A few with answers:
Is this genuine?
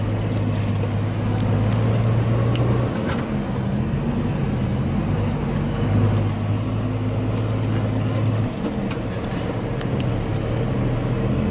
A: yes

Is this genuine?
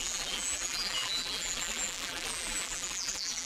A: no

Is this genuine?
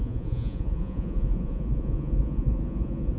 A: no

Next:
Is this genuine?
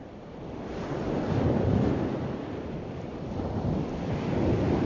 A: yes